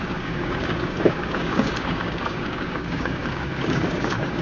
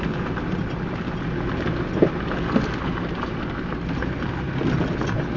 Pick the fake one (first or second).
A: first